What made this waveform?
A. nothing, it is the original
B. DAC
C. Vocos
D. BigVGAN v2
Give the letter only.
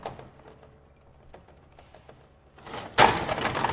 A